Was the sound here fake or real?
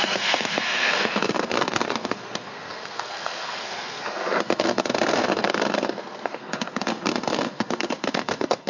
fake